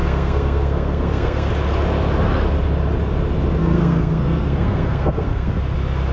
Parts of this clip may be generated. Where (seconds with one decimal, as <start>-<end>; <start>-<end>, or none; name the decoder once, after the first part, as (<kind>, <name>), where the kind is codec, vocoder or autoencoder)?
0.0-1.5 (codec, SNAC); 3.6-5.5